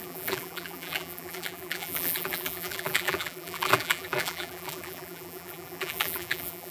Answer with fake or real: fake